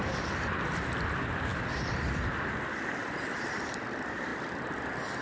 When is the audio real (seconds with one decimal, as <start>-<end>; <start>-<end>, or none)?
4.3-5.2